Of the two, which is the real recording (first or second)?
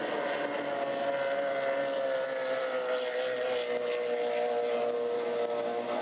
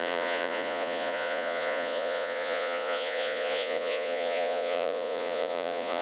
first